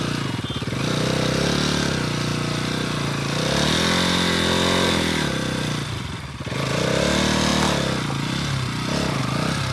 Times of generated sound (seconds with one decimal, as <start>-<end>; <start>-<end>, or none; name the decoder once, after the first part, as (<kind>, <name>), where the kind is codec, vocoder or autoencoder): none